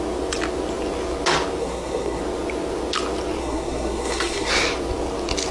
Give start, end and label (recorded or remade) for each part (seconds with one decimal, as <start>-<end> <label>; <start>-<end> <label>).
0.0-1.6 recorded; 1.6-2.2 remade; 2.2-3.4 recorded; 3.4-4.5 remade; 4.5-5.5 recorded